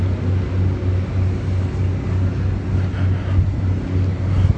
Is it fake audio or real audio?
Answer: real